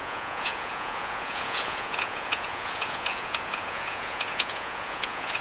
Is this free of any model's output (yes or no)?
no